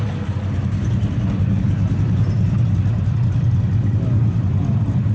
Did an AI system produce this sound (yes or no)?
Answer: no